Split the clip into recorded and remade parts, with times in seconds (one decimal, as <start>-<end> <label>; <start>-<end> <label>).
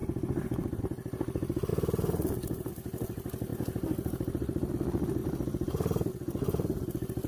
0.0-3.5 recorded; 3.5-4.7 remade; 4.7-5.2 recorded; 5.2-6.1 remade; 6.1-7.3 recorded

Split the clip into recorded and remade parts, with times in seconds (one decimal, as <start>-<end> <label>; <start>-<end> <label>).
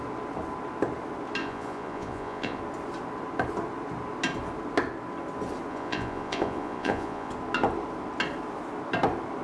0.0-1.4 recorded; 1.4-2.6 remade; 2.6-5.7 recorded; 5.7-7.3 remade; 7.3-9.4 recorded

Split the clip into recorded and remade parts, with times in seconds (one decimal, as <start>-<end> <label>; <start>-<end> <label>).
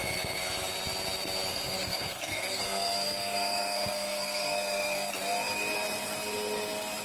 0.0-1.5 recorded; 1.5-5.1 remade; 5.1-7.0 recorded